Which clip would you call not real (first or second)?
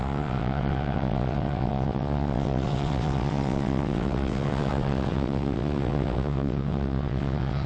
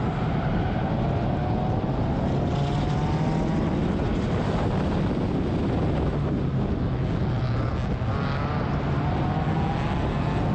first